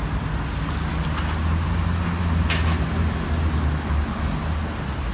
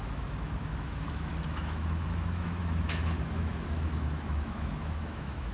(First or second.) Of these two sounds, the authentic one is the first